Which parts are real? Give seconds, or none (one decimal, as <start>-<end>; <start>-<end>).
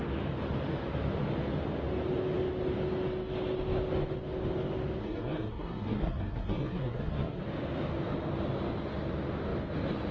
0.0-5.0; 7.4-10.1